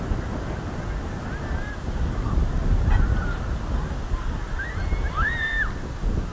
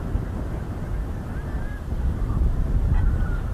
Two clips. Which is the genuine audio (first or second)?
first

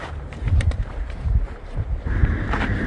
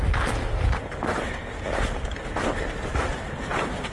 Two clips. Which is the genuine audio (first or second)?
second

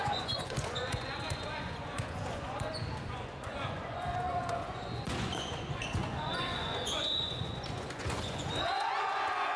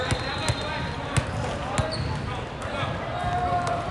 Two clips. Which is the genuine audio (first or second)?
second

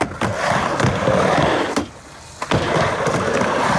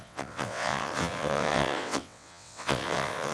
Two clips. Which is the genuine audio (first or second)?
first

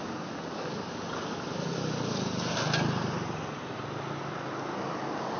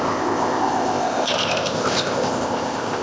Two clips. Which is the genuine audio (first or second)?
first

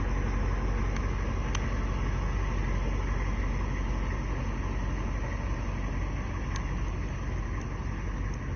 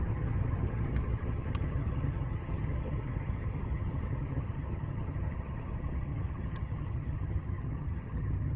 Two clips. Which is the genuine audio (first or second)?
first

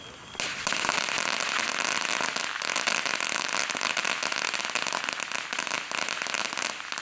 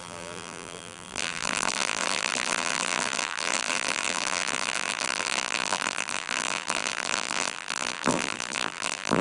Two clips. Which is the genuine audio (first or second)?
first